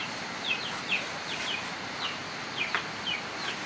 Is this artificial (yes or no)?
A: no